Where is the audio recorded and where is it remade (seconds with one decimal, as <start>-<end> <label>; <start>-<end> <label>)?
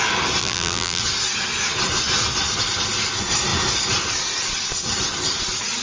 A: 0.0-0.4 recorded; 0.4-1.0 remade; 1.0-5.8 recorded